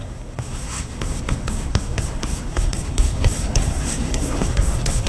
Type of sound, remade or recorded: remade